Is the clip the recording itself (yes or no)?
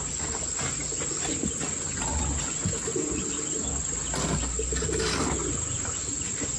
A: yes